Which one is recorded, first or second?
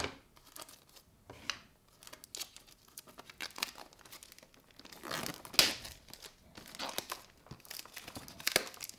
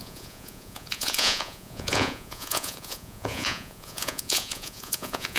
first